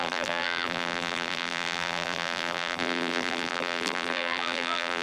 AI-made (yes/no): yes